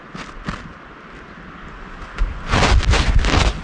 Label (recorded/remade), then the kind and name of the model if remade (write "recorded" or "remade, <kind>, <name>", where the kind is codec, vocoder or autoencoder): recorded